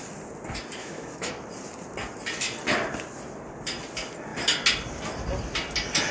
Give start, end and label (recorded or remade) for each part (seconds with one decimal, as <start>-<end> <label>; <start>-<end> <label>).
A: 0.0-0.8 recorded; 0.8-1.3 remade; 1.3-6.1 recorded

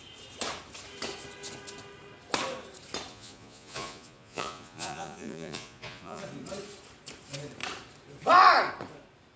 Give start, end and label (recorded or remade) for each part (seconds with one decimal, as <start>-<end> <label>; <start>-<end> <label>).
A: 0.0-3.1 recorded; 3.1-6.2 remade; 6.2-9.4 recorded

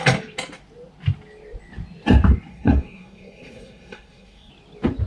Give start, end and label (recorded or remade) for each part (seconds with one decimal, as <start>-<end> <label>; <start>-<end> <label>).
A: 0.0-2.5 recorded; 2.5-4.5 remade; 4.5-5.1 recorded

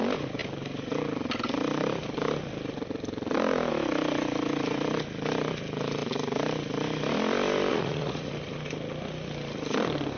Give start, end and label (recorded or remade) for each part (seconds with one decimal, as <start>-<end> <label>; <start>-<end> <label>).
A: 0.0-7.7 recorded; 7.7-8.3 remade; 8.3-10.2 recorded